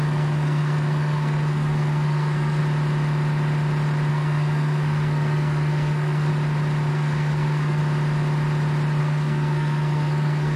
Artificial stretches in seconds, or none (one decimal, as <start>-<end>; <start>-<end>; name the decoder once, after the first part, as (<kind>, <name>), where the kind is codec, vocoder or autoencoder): 0.0-2.6 (codec, SNAC); 4.1-6.3; 6.9-7.8; 9.0-10.6